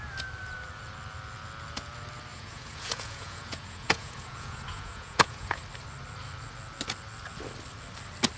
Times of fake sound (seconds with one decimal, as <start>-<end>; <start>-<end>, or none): 2.3-5.6